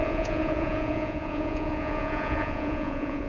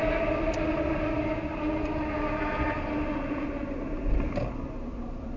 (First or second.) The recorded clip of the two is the second